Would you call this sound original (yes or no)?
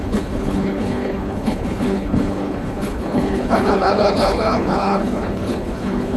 no